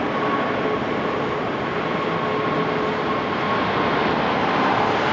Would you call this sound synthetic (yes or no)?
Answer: no